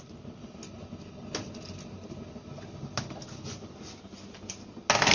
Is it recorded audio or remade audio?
recorded